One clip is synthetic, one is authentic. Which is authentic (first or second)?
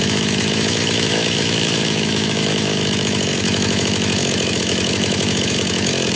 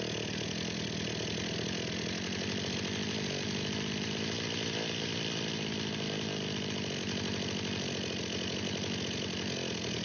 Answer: second